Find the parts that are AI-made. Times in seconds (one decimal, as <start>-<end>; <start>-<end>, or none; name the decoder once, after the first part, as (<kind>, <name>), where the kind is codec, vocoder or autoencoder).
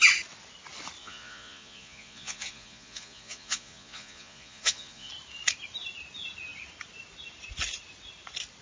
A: 1.0-5.1 (vocoder, Vocos)